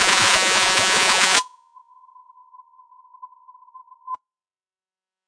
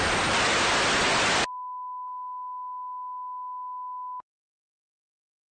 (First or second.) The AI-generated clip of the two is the first